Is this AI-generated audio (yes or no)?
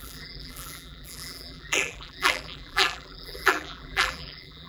yes